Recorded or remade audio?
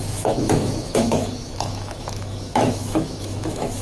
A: remade